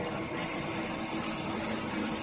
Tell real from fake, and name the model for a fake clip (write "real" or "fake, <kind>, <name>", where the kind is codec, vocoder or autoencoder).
fake, vocoder, BigVGAN v2